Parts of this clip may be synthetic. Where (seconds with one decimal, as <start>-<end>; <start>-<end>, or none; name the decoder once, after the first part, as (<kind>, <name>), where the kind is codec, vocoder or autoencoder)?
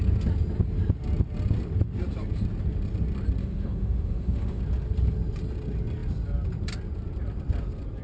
3.4-4.6 (autoencoder, DAC-VAE)